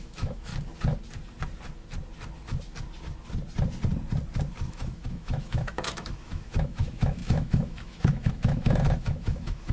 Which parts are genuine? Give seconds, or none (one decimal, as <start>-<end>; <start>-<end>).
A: 0.5-4.7